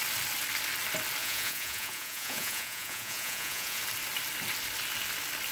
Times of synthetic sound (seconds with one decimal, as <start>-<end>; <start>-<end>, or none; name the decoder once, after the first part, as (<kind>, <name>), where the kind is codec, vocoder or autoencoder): 1.2-3.8 (vocoder, Vocos)